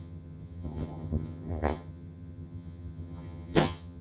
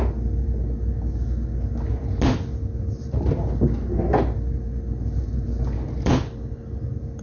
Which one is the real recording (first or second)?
second